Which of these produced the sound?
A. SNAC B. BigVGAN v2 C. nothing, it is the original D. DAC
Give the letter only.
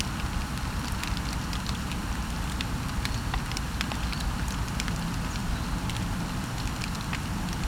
C